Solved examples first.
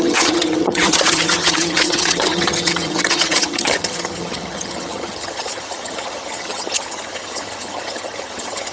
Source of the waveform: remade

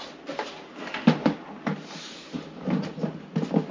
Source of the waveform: recorded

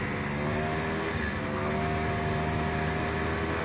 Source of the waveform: recorded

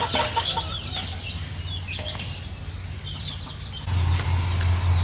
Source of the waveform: recorded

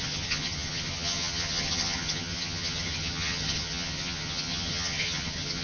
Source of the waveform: remade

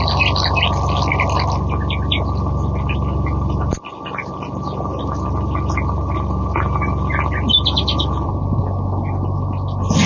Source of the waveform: recorded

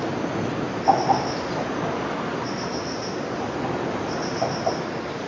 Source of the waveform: recorded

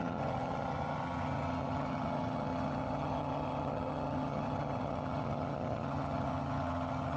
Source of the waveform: remade